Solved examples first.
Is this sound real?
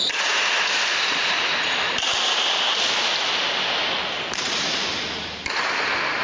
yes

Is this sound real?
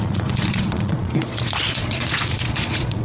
no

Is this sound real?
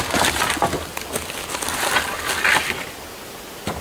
yes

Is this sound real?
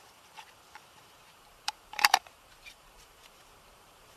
no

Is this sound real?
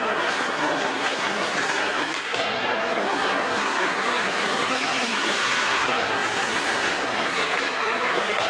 no